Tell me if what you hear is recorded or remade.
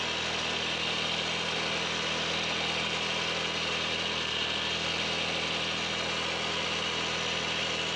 recorded